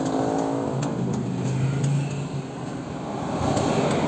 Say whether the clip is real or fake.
real